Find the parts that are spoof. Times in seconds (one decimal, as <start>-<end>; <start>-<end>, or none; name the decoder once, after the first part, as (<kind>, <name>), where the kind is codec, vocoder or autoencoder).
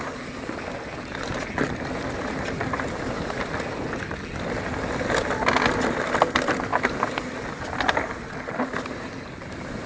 none